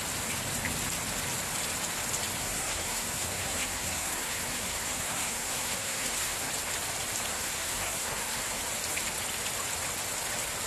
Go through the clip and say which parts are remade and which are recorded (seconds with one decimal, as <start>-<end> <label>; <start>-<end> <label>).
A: 0.0-2.4 recorded; 2.4-6.5 remade; 6.5-7.3 recorded; 7.3-8.6 remade; 8.6-10.7 recorded